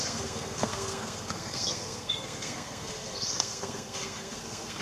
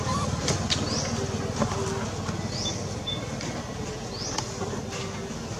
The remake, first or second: first